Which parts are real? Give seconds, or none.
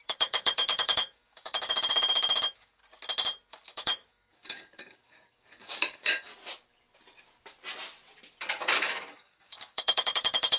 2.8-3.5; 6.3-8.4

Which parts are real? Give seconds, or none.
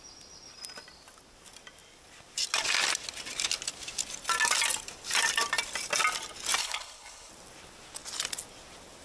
0.0-6.6; 7.3-9.0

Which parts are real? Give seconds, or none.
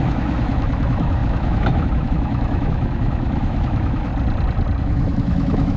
4.1-4.8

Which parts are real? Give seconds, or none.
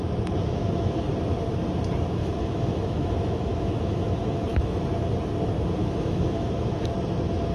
0.0-0.4; 1.1-2.2; 4.8-5.8; 6.8-7.5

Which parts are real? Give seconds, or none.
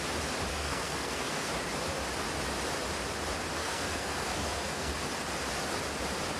0.0-0.5; 1.5-3.6; 4.9-6.4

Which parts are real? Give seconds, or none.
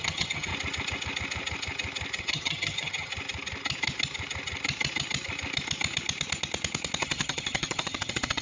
0.5-2.2; 3.1-7.0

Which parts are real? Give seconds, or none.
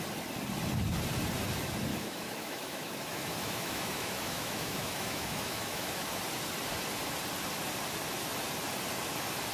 0.0-1.9; 6.2-9.5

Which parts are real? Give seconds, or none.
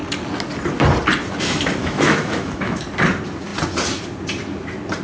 0.0-1.8; 2.8-5.0